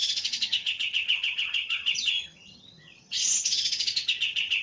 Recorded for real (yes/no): no